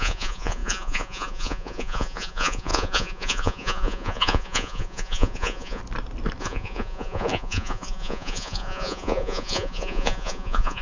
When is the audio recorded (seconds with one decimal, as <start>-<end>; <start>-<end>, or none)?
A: 5.8-6.4